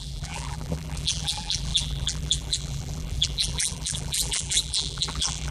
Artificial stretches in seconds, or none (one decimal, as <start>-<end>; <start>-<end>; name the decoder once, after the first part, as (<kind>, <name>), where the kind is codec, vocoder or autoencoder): 0.0-5.5 (vocoder, BigVGAN v2)